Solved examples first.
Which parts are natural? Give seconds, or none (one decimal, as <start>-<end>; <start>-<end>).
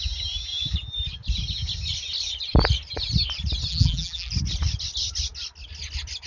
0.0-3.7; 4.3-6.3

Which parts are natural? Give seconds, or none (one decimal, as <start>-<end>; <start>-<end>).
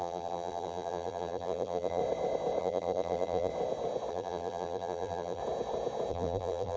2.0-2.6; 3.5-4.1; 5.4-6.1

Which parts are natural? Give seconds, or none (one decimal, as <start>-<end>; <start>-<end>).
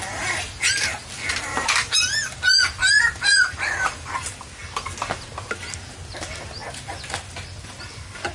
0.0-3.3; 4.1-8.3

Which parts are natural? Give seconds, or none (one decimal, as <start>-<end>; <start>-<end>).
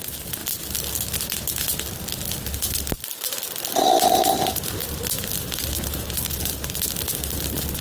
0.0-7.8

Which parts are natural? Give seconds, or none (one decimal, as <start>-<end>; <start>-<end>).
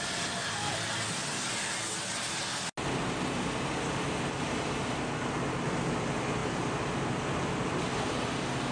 0.0-0.7; 1.2-8.7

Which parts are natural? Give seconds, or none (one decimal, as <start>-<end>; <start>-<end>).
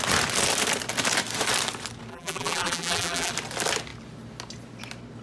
0.0-2.1; 3.3-5.2